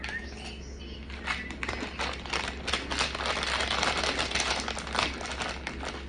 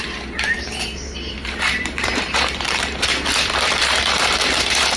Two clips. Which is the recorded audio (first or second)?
first